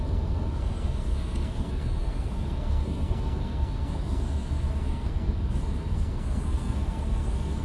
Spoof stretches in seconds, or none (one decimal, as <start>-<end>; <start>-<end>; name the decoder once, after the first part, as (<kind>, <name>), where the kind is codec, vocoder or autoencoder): 0.0-7.6 (codec, SNAC)